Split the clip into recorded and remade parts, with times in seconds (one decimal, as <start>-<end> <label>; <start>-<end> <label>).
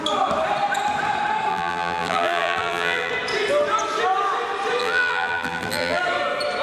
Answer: 0.0-1.5 recorded; 1.5-3.1 remade; 3.1-4.8 recorded; 4.8-6.0 remade; 6.0-6.6 recorded